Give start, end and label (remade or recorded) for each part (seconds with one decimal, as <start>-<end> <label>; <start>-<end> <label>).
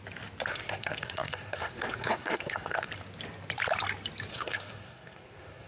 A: 0.0-0.5 recorded; 0.5-2.9 remade; 2.9-4.3 recorded; 4.3-5.7 remade